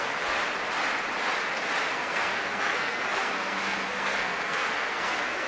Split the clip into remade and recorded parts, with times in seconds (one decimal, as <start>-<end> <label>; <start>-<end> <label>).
0.0-0.4 remade; 0.4-1.9 recorded; 1.9-5.5 remade